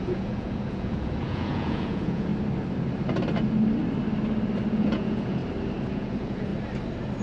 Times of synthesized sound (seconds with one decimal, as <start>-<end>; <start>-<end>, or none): 0.0-2.3; 4.7-5.4; 5.9-6.5